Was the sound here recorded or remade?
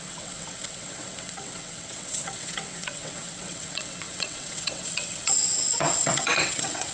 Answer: remade